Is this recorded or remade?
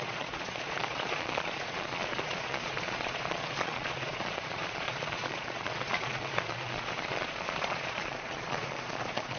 remade